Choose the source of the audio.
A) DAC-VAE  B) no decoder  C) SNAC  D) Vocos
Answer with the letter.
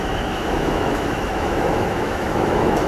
A